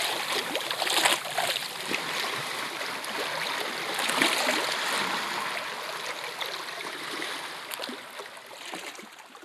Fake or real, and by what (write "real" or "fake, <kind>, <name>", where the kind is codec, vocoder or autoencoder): real